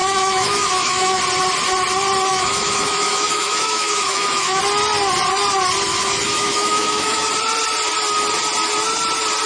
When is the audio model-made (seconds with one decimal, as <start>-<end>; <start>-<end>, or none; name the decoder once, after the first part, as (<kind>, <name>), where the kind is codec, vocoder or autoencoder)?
0.0-1.2 (autoencoder, DAC-VAE); 2.3-4.6; 5.9-7.3